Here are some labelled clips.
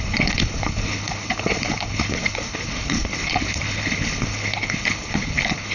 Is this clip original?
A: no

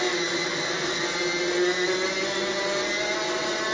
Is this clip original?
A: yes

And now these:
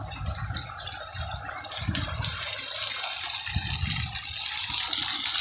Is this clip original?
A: yes